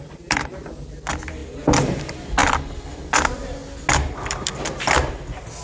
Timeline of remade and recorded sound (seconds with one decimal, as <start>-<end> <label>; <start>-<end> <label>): 0.0-5.6 recorded